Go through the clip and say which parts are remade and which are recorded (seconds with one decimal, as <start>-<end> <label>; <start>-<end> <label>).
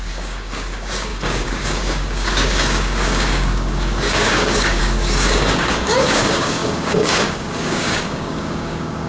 0.0-9.1 remade